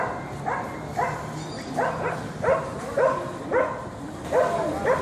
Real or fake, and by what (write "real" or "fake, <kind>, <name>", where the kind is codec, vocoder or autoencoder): real